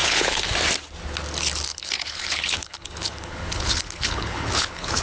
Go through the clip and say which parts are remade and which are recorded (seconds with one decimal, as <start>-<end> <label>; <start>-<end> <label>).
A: 0.0-0.5 remade; 0.5-1.7 recorded; 1.7-5.0 remade